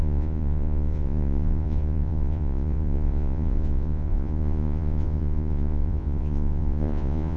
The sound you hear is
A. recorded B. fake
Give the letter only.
B